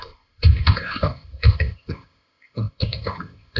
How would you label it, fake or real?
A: fake